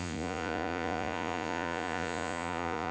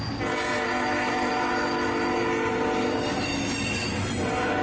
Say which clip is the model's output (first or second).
first